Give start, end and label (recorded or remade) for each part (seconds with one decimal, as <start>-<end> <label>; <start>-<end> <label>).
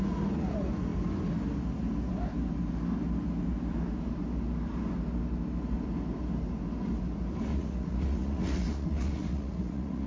0.0-7.5 recorded; 7.5-10.1 remade